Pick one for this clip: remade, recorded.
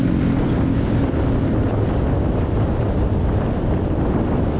remade